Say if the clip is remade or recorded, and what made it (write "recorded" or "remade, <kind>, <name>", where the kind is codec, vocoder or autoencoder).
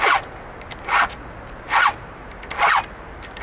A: recorded